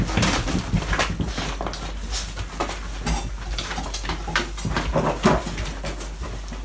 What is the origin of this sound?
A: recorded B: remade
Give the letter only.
A